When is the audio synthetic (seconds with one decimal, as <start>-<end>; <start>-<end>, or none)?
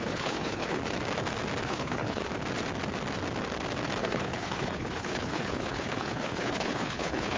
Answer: 0.0-0.8; 1.6-2.2; 4.0-7.4